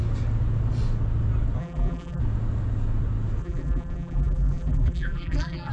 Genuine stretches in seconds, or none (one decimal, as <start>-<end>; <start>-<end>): 0.0-1.6; 2.2-3.4